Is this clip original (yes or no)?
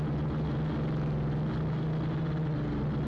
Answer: yes